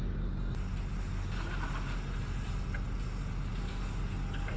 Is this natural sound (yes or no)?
yes